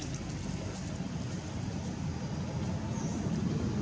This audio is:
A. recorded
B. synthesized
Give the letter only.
A